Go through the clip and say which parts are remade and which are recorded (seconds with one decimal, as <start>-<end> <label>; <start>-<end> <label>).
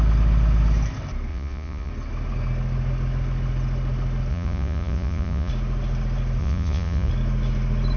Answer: 0.0-1.3 recorded; 1.3-1.9 remade; 1.9-4.3 recorded; 4.3-5.5 remade; 5.5-6.4 recorded; 6.4-7.1 remade; 7.1-8.0 recorded